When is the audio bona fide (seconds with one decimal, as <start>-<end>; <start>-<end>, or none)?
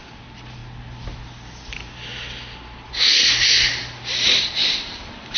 0.6-3.8